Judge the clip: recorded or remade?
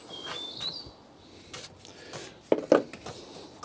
recorded